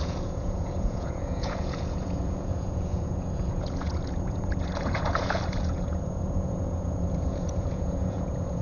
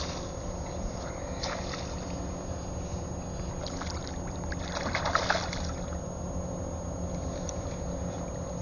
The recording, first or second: second